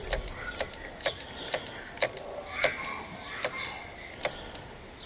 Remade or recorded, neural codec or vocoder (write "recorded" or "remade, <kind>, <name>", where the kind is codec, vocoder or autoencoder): recorded